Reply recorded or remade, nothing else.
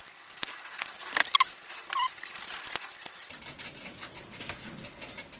recorded